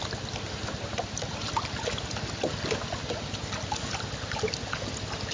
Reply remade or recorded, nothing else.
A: recorded